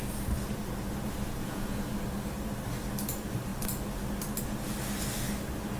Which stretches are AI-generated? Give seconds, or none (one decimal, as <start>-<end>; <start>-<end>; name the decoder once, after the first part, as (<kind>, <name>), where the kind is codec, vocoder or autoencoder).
1.4-1.9 (vocoder, Vocos)